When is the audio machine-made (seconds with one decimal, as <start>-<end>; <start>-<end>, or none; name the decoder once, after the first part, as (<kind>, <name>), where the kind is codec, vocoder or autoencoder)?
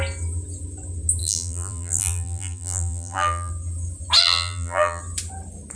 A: 1.2-3.5 (vocoder, BigVGAN v2); 4.2-5.0